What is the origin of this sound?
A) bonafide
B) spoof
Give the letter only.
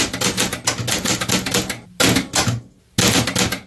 A